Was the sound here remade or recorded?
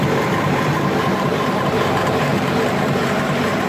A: remade